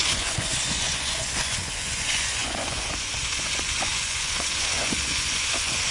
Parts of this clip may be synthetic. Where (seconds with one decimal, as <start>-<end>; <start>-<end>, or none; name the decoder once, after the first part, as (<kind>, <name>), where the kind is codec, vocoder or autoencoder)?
0.0-5.9 (vocoder, Vocos)

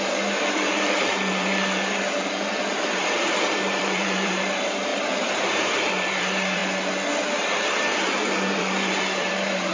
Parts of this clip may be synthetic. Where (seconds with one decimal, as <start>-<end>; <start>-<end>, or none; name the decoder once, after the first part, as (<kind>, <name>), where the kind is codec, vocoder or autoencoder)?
0.0-6.6 (vocoder, BigVGAN v2); 7.8-9.7

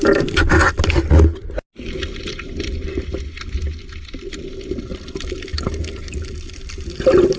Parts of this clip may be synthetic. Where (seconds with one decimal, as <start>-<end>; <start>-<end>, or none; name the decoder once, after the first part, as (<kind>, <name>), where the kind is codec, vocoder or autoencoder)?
none

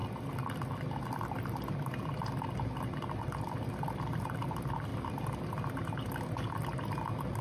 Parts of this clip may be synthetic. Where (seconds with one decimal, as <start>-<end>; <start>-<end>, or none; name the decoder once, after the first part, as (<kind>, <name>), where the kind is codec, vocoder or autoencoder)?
none

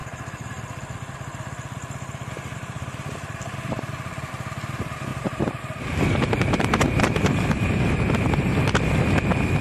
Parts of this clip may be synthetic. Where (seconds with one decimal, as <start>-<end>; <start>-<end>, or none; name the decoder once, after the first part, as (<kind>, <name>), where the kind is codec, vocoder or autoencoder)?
5.1-8.5 (vocoder, BigVGAN v2)

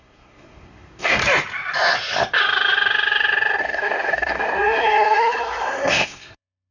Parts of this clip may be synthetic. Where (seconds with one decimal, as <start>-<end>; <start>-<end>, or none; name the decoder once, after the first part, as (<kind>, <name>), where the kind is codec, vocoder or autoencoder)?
0.0-1.2 (codec, SNAC); 3.6-6.7

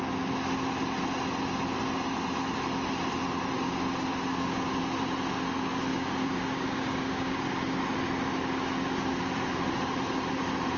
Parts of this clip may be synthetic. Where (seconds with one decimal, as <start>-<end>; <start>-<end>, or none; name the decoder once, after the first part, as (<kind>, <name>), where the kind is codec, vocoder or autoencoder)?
4.3-4.8 (codec, DAC); 5.9-7.8